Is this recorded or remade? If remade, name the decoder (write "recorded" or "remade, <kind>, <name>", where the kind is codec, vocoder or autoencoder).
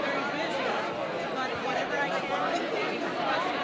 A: remade, vocoder, BigVGAN v2